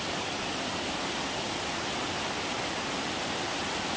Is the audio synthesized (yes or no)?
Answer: no